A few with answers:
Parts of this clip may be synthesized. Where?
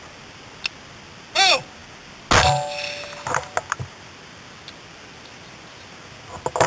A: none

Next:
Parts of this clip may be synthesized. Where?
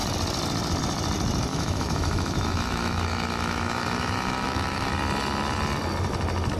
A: 1.5-4.9 (autoencoder, DAC-VAE)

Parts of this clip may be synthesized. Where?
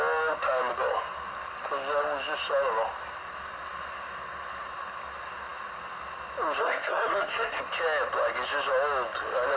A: 6.6-7.6 (codec, SNAC)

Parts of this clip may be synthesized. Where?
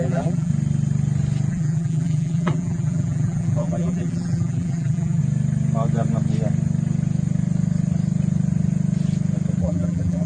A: 0.0-0.5 (vocoder, BigVGAN v2); 1.5-5.2; 9.6-10.3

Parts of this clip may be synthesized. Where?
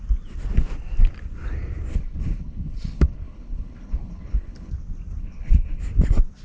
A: 1.9-4.7 (codec, HILCodec); 5.2-5.8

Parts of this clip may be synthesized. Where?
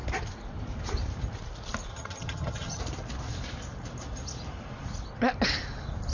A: 1.9-2.8 (vocoder, HiFi-GAN)